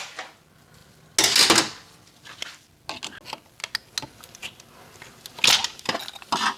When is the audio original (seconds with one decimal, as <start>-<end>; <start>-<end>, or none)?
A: 0.0-6.6